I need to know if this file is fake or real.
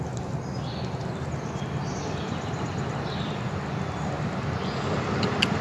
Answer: real